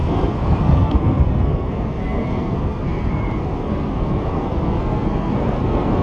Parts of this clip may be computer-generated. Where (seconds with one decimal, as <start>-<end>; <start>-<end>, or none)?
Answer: 0.0-6.0